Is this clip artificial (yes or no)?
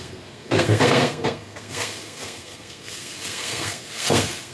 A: yes